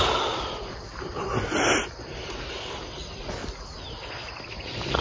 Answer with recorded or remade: recorded